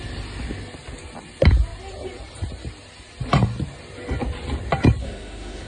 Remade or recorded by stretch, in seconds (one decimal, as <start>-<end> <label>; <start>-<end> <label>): 0.0-5.0 recorded; 5.0-5.7 remade